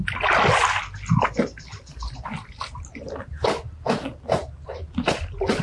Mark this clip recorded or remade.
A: recorded